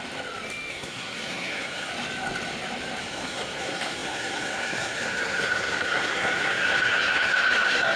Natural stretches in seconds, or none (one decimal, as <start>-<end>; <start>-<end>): 0.0-0.7; 1.9-3.0

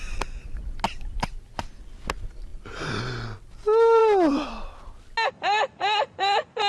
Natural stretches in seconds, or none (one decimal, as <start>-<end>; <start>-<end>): 0.0-6.7

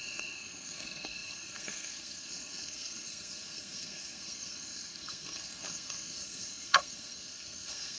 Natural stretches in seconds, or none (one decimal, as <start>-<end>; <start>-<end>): none

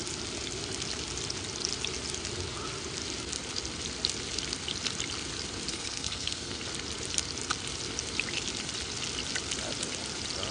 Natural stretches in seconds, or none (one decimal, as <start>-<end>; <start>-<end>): 0.0-5.7; 6.6-10.5